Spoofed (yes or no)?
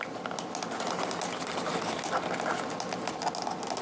no